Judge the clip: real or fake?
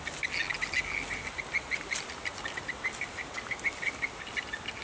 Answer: real